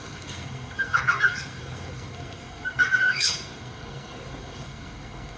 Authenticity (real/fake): fake